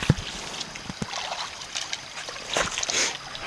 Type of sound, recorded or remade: recorded